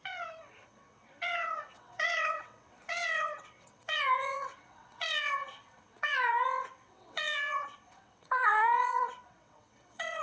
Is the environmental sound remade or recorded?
remade